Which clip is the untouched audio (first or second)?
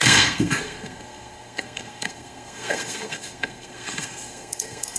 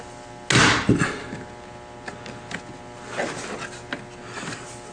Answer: second